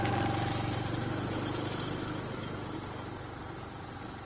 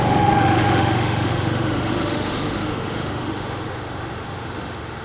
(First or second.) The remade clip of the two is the second